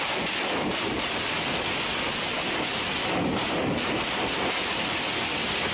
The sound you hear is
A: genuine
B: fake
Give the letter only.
A